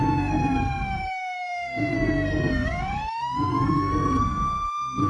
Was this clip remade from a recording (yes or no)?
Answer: yes